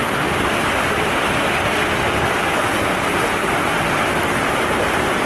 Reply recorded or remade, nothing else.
recorded